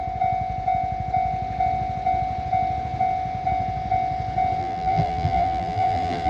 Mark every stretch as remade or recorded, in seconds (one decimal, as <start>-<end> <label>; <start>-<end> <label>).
0.0-4.6 recorded; 4.6-6.3 remade

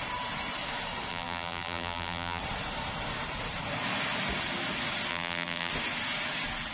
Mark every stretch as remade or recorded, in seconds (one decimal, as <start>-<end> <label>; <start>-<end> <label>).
0.0-1.1 recorded; 1.1-2.4 remade; 2.4-5.1 recorded; 5.1-5.7 remade; 5.7-6.7 recorded

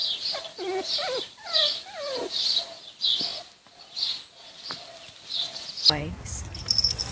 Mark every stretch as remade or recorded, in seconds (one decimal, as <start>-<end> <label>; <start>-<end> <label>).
0.0-2.8 remade; 2.8-7.1 recorded

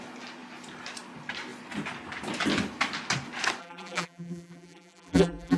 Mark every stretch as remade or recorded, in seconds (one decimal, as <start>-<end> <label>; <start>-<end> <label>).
0.0-3.6 recorded; 3.6-5.6 remade